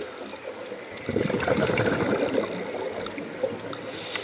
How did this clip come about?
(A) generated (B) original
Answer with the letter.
B